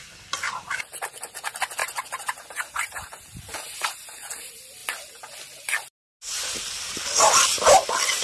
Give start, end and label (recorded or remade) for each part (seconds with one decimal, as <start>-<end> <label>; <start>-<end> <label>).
0.0-1.8 recorded; 1.8-4.3 remade; 4.3-8.2 recorded